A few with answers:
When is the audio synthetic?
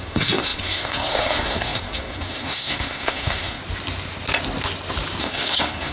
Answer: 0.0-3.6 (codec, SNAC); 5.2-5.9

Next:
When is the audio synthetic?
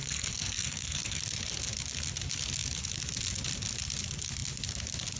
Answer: 0.0-1.2 (codec, SNAC)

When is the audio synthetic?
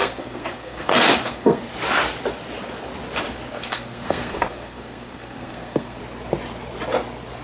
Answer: 0.0-1.6 (codec, SNAC); 3.5-6.0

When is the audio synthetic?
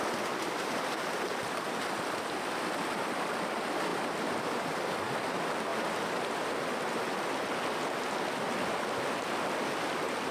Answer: none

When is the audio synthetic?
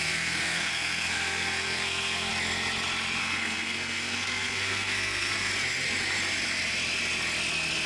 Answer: 0.0-2.3 (codec, SNAC); 3.2-5.5